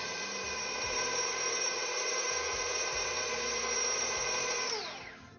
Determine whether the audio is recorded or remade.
remade